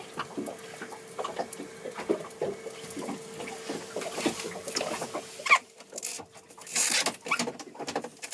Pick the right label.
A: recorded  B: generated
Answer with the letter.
A